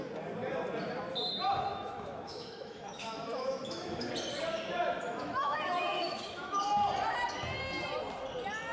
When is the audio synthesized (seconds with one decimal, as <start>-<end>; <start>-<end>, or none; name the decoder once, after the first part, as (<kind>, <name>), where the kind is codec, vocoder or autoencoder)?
1.7-4.1 (autoencoder, DAC-VAE); 5.0-6.6